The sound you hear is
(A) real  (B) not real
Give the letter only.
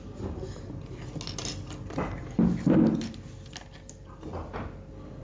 A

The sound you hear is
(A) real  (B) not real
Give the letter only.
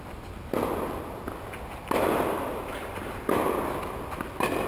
A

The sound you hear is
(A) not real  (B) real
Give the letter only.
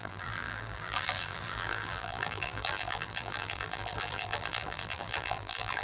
A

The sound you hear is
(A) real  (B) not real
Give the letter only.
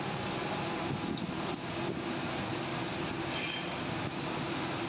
A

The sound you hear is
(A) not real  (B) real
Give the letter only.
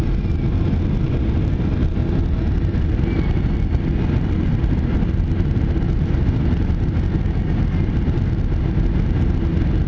B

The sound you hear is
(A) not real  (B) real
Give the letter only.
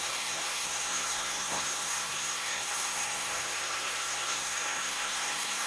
A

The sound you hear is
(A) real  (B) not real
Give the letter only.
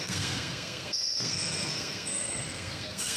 B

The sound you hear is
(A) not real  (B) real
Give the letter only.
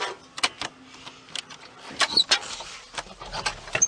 B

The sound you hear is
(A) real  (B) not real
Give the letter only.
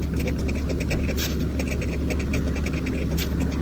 A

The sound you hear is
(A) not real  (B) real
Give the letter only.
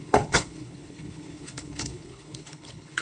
A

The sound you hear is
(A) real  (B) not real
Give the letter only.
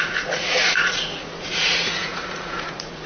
B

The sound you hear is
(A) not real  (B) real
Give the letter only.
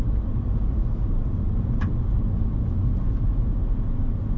B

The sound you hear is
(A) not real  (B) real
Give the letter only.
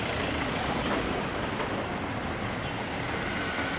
B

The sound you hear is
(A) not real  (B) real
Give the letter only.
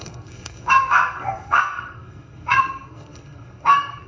A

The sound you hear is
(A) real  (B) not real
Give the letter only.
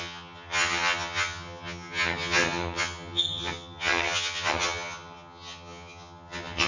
B